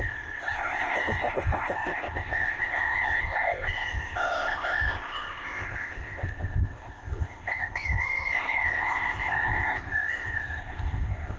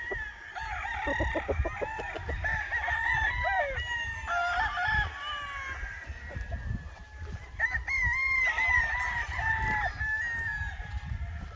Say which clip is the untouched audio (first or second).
second